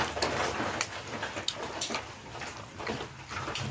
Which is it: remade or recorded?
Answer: recorded